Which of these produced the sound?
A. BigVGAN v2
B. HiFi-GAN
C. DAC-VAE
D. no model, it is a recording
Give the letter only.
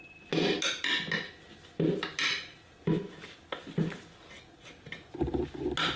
D